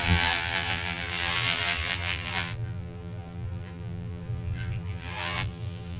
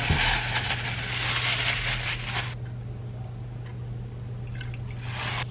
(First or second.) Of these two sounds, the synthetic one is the first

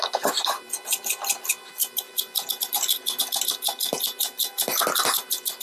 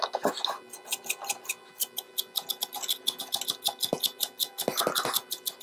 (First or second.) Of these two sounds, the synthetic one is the first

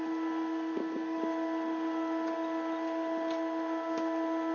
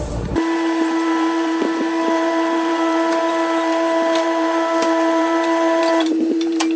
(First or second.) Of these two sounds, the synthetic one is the second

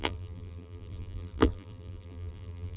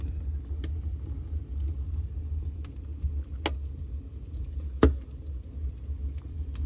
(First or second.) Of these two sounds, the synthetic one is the first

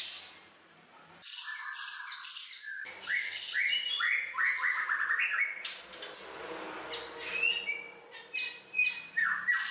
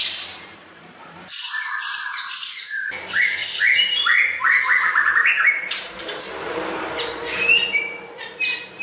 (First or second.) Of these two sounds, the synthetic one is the second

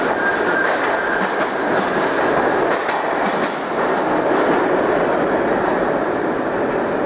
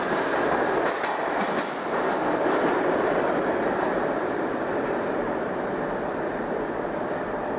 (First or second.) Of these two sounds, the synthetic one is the second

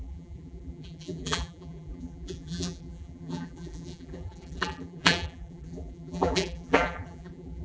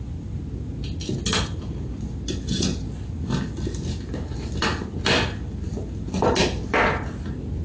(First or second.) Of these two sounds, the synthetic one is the first